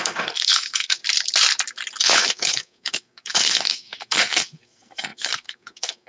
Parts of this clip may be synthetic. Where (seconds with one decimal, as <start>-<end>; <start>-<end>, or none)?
0.0-1.0; 2.0-6.1